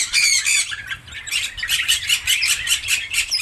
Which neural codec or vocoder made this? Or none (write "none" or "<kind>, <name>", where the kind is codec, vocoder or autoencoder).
vocoder, BigVGAN v2